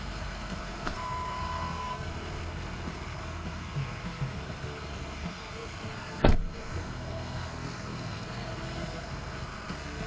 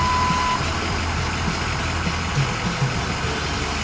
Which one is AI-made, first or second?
first